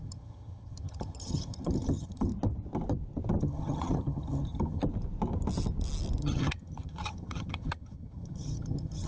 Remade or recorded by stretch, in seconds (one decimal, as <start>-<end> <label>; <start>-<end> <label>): 0.0-2.3 remade; 2.3-3.4 recorded; 3.4-4.8 remade; 4.8-6.2 recorded; 6.2-9.1 remade